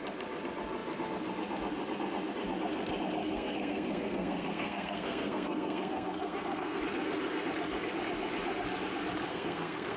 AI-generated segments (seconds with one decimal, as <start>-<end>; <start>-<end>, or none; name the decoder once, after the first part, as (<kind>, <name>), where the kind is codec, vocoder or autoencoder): 3.2-6.8 (codec, SNAC); 9.3-10.0